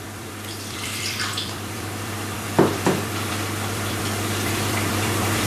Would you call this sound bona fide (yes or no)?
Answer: no